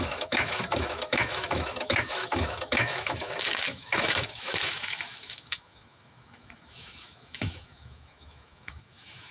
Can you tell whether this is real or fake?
fake